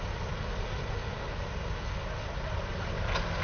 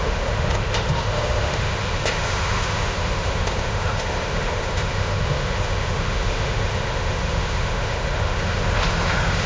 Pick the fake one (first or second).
second